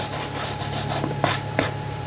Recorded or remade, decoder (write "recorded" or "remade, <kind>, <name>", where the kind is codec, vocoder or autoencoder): remade, vocoder, BigVGAN v2